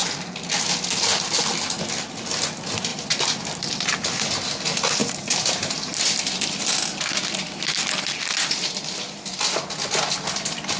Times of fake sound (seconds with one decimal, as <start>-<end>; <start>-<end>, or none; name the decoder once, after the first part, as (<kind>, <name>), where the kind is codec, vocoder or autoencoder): 0.0-0.5 (vocoder, BigVGAN v2); 2.9-4.2; 5.0-6.3